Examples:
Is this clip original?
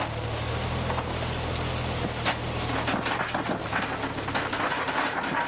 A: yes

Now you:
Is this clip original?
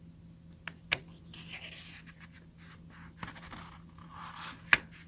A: yes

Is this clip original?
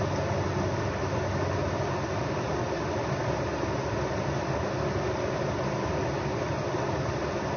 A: yes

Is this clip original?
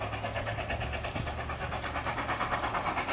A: yes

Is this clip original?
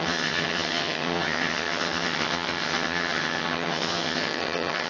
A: no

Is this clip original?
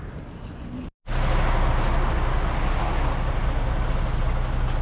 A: yes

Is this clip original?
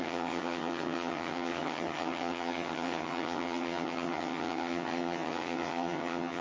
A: no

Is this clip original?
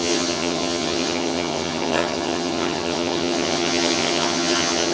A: no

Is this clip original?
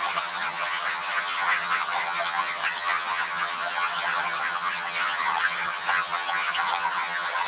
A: no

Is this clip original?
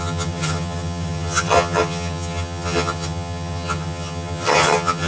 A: no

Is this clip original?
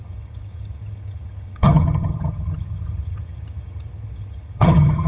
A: no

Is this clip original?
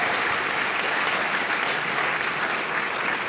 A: yes